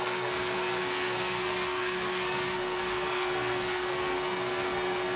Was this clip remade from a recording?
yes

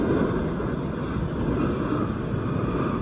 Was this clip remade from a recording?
no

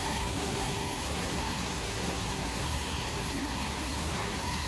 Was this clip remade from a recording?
yes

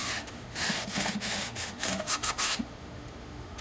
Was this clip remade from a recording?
yes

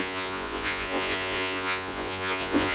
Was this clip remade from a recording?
yes